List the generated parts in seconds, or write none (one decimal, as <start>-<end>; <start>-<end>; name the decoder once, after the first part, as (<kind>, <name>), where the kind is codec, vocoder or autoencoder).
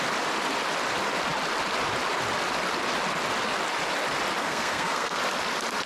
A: 4.4-5.2 (codec, SNAC)